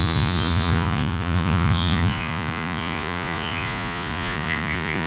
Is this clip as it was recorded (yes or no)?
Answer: no